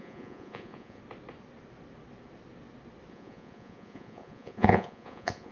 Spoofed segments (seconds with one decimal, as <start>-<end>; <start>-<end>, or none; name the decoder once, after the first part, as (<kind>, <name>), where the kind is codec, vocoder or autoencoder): 0.0-1.0 (vocoder, Vocos); 3.1-5.5